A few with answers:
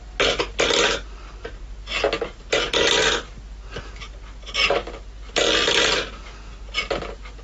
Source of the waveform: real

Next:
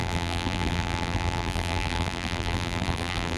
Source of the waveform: fake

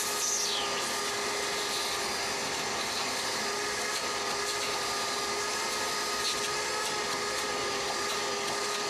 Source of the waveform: real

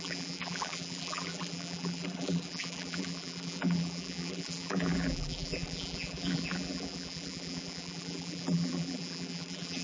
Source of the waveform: fake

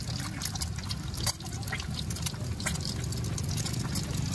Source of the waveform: real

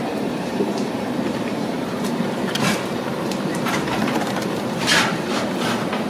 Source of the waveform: fake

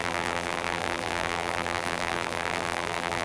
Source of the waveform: fake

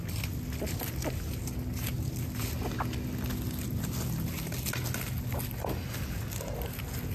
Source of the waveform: real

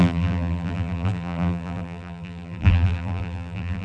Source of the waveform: fake